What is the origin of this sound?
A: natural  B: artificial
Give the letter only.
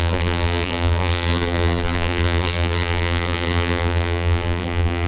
B